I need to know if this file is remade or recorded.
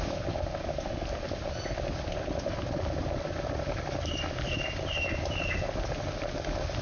recorded